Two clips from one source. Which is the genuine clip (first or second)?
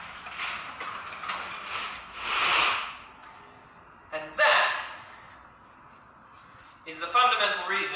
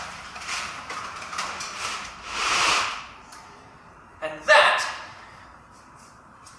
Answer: first